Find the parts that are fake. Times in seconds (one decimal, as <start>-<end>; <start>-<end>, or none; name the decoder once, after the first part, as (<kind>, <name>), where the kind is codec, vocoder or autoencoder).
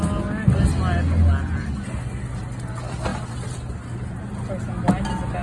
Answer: none